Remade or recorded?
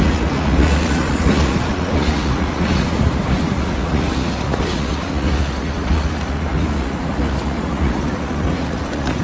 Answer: remade